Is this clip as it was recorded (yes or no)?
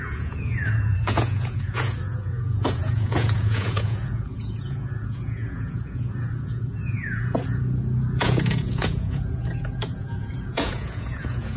no